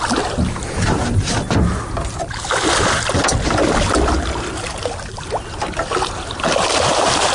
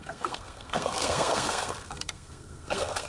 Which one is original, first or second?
first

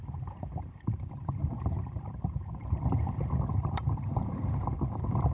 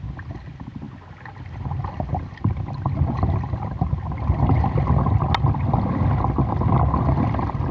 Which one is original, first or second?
second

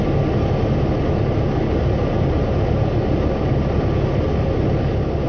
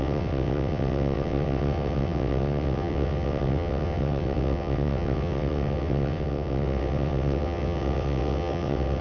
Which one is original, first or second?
first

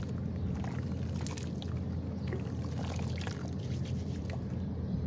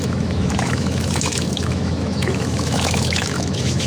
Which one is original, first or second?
first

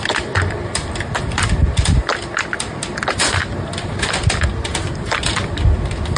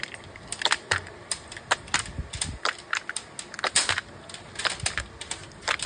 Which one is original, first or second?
second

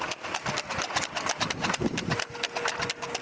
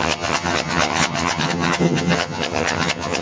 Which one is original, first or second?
first